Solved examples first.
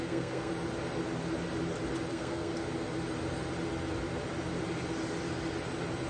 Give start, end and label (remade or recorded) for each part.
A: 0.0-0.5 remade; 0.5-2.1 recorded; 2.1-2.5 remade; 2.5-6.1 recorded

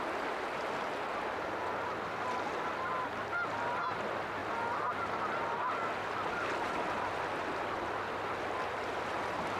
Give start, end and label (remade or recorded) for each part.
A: 0.0-9.6 recorded

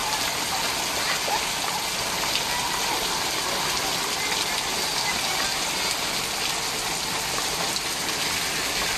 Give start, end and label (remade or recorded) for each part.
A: 0.0-9.0 recorded

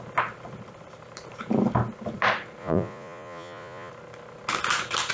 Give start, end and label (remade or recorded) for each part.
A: 0.0-2.6 recorded; 2.6-3.9 remade; 3.9-5.1 recorded